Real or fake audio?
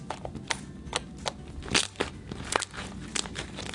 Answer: real